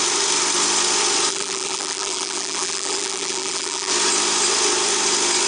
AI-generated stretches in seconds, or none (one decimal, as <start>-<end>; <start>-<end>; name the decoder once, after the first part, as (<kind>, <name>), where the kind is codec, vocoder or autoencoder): 1.3-3.9 (vocoder, BigVGAN v2)